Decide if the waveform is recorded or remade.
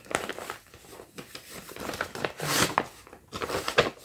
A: recorded